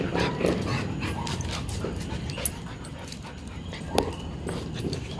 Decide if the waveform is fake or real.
real